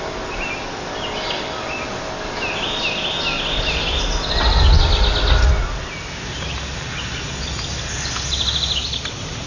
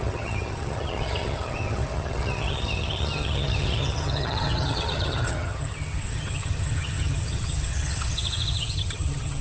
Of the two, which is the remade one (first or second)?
second